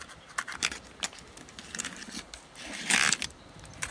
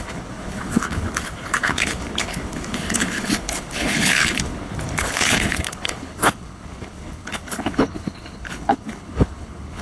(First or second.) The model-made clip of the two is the second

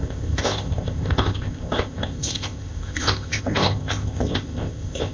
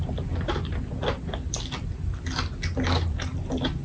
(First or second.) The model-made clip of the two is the first